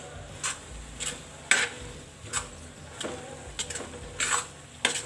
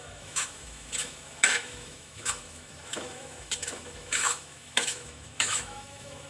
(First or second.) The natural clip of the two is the first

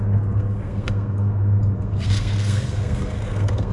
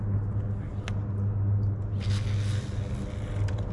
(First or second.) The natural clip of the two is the second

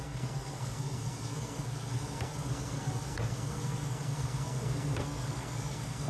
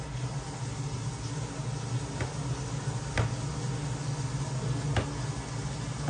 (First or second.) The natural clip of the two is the second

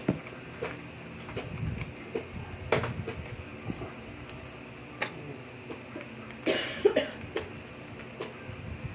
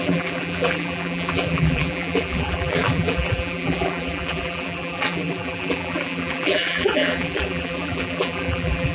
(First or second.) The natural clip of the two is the first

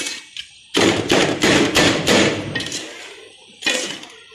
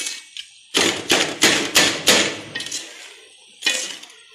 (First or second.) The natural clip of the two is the second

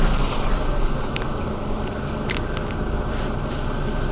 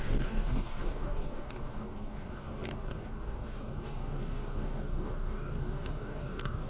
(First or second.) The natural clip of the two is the first